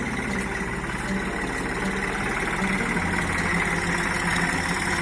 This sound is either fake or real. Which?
real